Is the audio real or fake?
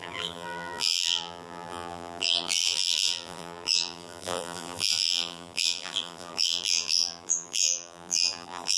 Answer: fake